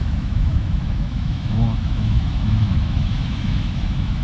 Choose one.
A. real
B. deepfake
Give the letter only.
B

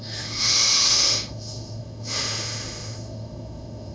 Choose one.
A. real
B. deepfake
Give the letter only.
B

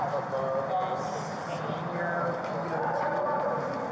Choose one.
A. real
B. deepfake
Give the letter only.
A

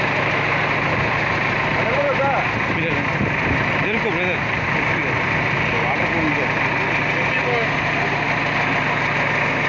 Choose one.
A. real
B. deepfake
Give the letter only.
A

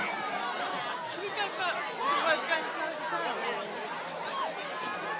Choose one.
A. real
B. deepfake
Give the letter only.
A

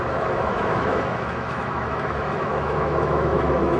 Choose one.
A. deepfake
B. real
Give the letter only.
A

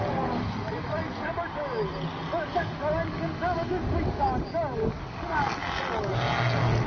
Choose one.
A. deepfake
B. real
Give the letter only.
B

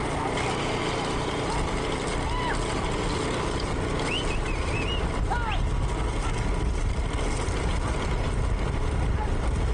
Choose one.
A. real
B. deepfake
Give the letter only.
A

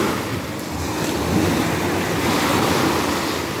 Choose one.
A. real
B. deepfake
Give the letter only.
A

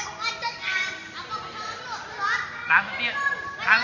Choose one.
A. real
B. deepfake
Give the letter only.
A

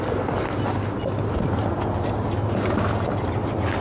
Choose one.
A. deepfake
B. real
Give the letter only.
B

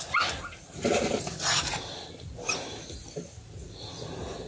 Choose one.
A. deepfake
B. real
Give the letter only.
B